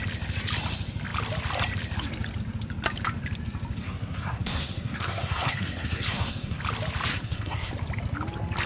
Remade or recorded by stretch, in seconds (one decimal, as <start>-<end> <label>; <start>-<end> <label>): 0.0-3.8 recorded; 3.8-6.6 remade; 6.6-7.1 recorded; 7.1-7.7 remade; 7.7-8.7 recorded

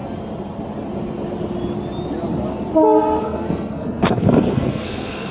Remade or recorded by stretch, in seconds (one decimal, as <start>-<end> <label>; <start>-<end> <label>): 0.0-3.2 recorded; 3.2-5.3 remade

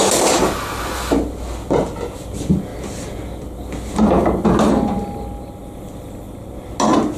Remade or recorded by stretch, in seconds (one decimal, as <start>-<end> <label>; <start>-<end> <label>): 0.0-7.2 recorded

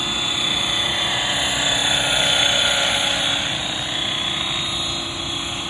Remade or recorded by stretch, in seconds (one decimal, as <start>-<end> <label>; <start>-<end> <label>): 0.0-5.7 recorded

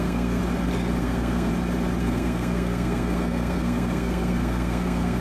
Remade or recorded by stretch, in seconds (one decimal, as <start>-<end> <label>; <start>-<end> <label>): 0.0-0.4 remade; 0.4-1.0 recorded; 1.0-1.5 remade; 1.5-2.0 recorded; 2.0-5.2 remade

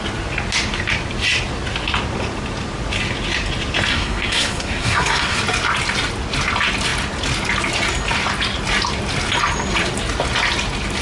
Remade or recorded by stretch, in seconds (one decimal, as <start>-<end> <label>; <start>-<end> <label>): 0.0-3.9 recorded; 3.9-5.4 remade; 5.4-11.0 recorded

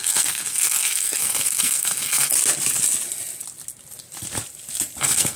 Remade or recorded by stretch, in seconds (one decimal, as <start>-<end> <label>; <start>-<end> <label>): 0.0-2.3 remade; 2.3-5.0 recorded; 5.0-5.4 remade